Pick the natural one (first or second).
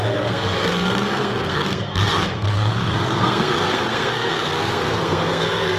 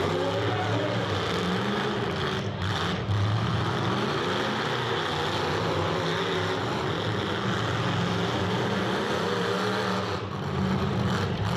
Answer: second